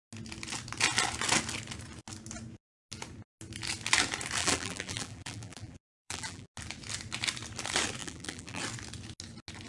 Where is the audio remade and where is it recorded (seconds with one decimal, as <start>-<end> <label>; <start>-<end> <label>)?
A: 0.0-4.4 recorded; 4.4-6.5 remade; 6.5-8.0 recorded; 8.0-8.6 remade; 8.6-9.7 recorded